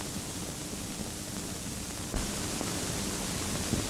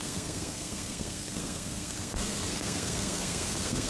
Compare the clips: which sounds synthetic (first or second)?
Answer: second